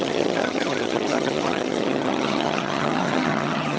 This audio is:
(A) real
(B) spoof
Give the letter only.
B